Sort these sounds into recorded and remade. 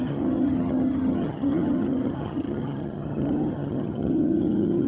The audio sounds remade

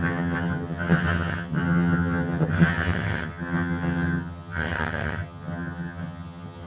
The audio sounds remade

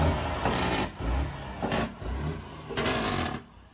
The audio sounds recorded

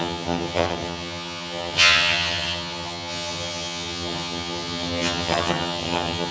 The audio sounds remade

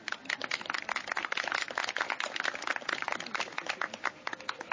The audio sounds recorded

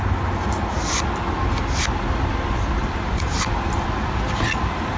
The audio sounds recorded